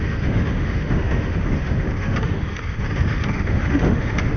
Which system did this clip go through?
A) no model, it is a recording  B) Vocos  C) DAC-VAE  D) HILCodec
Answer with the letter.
C